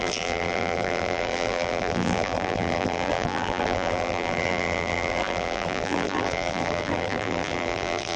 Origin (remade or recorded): remade